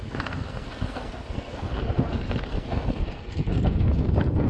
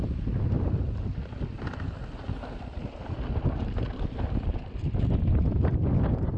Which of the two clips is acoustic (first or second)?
second